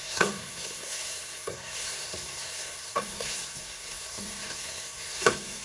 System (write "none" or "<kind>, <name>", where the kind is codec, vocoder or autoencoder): codec, SNAC